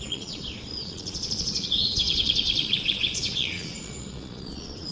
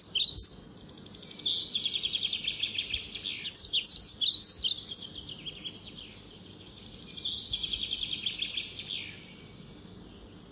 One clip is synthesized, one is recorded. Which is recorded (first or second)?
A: second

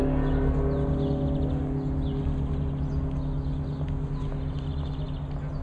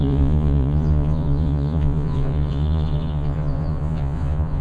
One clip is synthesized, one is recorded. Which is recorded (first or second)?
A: first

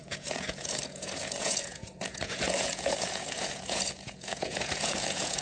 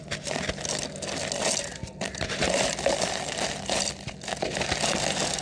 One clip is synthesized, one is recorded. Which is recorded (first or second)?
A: second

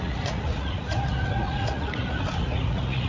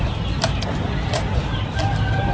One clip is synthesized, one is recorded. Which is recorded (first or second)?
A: second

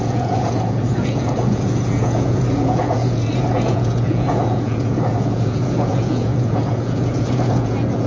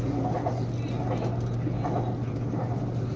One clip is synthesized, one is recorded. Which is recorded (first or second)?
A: second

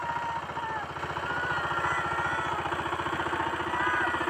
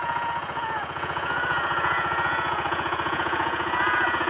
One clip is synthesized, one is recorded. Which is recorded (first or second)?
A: first